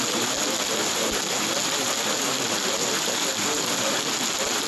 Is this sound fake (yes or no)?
no